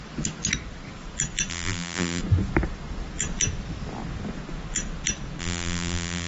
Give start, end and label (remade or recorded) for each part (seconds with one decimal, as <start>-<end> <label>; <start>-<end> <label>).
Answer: 0.0-1.5 recorded; 1.5-2.2 remade; 2.2-5.4 recorded; 5.4-6.3 remade